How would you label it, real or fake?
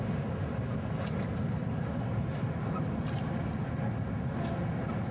real